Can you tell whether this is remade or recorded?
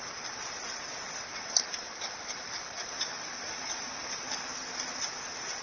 recorded